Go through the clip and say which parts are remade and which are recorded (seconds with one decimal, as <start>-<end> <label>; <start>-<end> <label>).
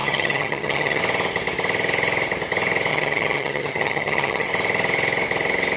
0.0-1.0 remade; 1.0-2.9 recorded; 2.9-4.5 remade; 4.5-5.8 recorded